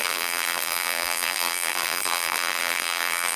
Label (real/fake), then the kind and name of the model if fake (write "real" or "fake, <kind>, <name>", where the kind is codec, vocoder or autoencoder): fake, vocoder, BigVGAN v2